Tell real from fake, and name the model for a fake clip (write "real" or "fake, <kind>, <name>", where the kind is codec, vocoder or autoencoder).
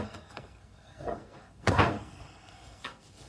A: fake, codec, SNAC